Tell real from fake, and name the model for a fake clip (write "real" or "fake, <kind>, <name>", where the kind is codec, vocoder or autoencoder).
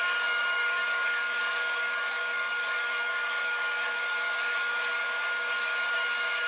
fake, codec, DAC